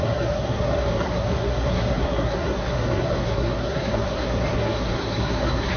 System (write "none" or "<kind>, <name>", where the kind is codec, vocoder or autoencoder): codec, SNAC